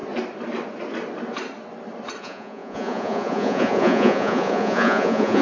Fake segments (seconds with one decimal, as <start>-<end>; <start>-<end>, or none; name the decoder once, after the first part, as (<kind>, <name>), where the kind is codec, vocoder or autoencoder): 2.2-5.4 (vocoder, Vocos)